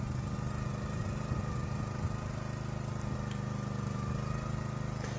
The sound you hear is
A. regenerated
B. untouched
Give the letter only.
B